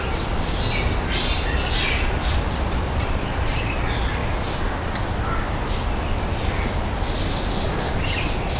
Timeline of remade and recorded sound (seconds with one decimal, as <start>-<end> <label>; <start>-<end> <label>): 0.0-8.6 recorded